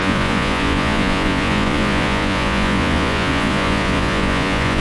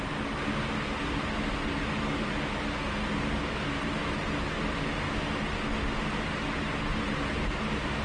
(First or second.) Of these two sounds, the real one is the second